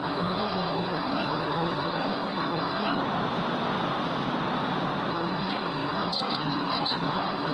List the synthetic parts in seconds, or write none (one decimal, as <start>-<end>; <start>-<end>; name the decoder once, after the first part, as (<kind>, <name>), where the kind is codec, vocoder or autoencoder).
0.0-3.0 (codec, SNAC); 5.1-7.5